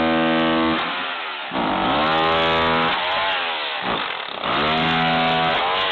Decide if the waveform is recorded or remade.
recorded